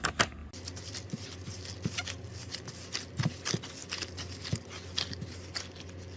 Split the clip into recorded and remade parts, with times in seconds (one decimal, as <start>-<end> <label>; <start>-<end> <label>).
0.0-6.2 recorded